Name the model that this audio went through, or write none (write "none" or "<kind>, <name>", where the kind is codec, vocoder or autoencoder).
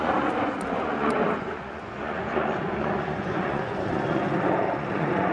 vocoder, Vocos